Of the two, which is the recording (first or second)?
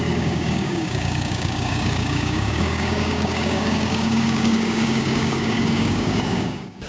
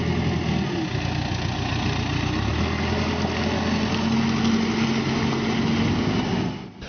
second